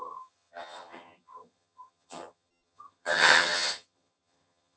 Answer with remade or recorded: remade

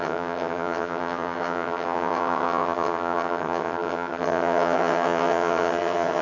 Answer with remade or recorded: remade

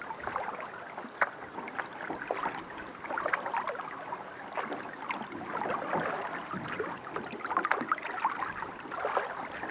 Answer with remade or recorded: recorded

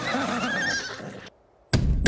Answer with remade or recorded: recorded